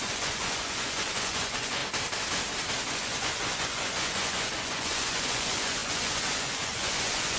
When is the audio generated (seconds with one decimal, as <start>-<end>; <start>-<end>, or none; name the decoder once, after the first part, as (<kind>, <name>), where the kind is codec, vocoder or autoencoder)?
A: 0.0-1.8 (vocoder, Vocos); 2.9-7.4